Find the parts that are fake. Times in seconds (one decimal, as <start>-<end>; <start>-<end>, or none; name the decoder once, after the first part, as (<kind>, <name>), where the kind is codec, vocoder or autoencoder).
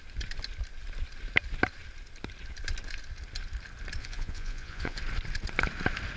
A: 4.0-5.0 (vocoder, Vocos)